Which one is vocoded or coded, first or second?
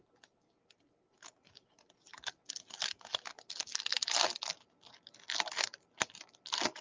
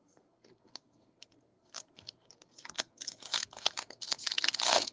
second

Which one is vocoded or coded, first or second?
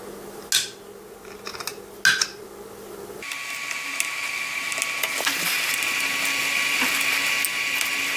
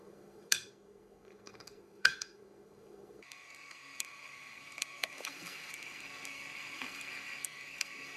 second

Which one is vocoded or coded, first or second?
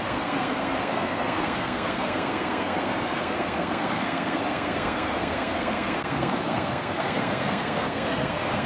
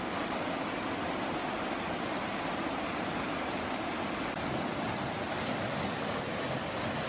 first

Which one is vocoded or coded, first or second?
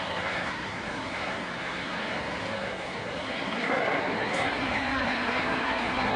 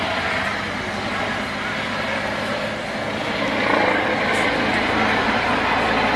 first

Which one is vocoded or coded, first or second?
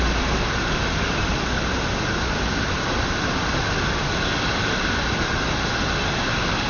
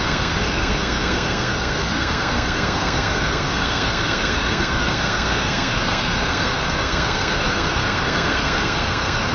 second